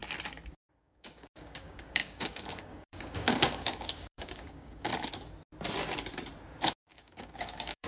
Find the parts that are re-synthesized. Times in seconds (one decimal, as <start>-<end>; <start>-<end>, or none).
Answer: 0.8-4.9; 6.9-7.9